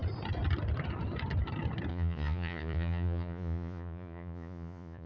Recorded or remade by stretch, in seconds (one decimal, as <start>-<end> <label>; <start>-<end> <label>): 0.0-1.9 recorded; 1.9-5.1 remade

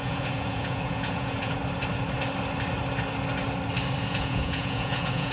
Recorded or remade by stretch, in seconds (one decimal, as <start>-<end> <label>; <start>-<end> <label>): 0.0-1.6 remade; 1.6-4.0 recorded; 4.0-5.3 remade

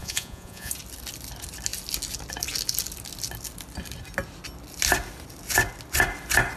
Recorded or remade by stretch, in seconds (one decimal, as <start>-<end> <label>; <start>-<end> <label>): 0.0-0.7 remade; 0.7-6.6 recorded